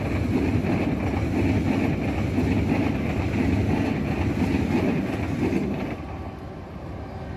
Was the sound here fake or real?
real